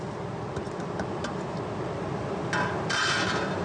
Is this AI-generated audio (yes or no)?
no